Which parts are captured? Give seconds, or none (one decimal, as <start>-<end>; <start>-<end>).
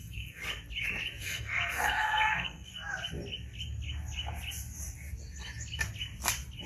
0.4-1.2; 2.7-6.7